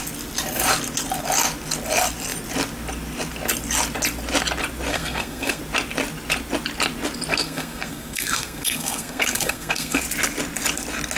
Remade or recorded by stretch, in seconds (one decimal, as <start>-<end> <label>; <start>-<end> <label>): 0.0-4.9 recorded; 4.9-5.6 remade; 5.6-7.3 recorded; 7.3-10.0 remade; 10.0-11.2 recorded